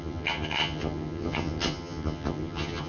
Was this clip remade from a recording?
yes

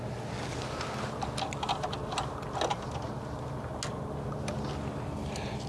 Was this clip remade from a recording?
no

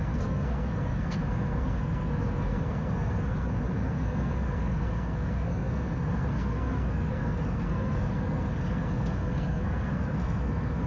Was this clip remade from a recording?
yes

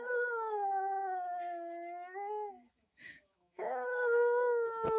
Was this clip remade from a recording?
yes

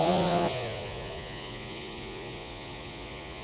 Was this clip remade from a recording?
yes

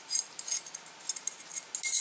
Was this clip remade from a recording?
no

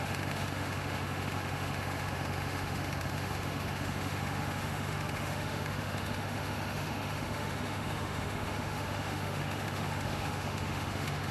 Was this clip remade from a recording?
yes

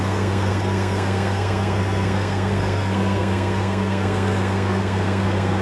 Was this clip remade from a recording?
yes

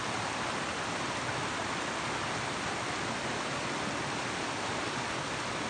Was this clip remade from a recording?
no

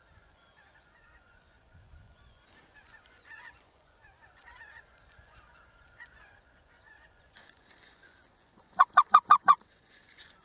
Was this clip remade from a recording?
yes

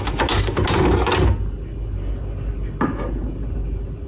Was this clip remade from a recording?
no